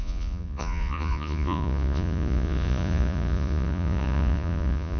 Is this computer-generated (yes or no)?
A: yes